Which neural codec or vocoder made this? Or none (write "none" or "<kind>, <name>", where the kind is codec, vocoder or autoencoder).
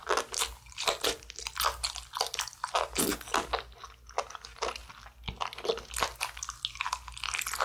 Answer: none